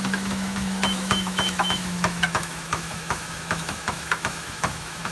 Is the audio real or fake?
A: fake